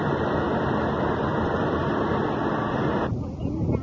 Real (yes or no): yes